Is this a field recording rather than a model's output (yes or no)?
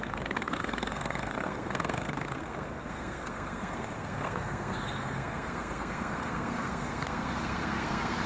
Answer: no